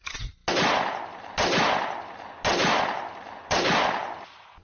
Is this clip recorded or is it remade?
recorded